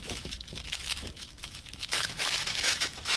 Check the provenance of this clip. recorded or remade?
remade